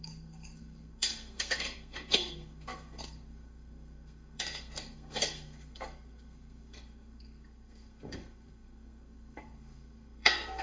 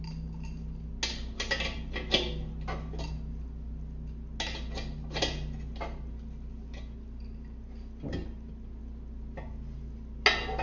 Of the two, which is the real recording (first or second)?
second